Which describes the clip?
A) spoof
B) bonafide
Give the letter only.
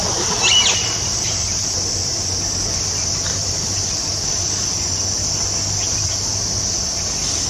B